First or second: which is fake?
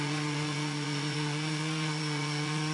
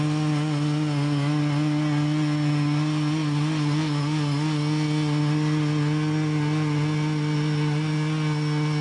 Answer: first